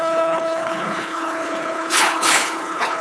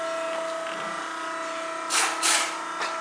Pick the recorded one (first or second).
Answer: second